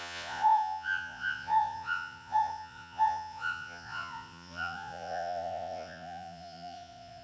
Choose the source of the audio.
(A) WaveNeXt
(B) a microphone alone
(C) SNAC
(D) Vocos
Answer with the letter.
D